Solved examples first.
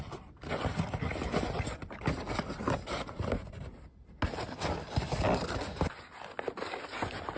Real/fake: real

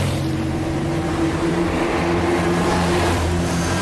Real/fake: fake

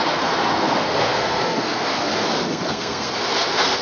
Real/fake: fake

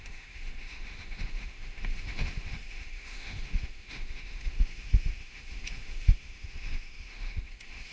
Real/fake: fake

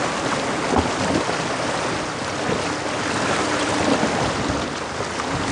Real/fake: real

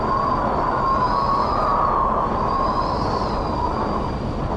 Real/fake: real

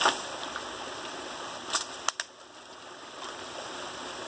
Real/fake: real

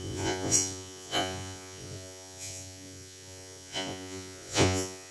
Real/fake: fake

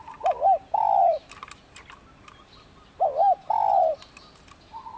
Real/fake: real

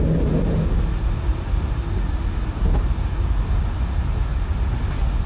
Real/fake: real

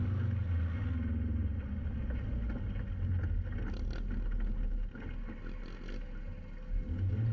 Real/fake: real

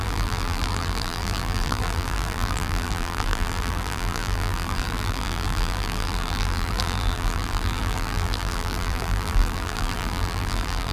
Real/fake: fake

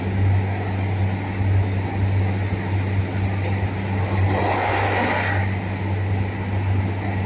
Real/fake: real